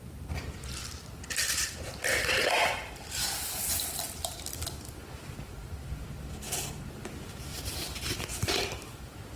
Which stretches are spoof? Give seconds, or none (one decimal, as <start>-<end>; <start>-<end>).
2.1-3.6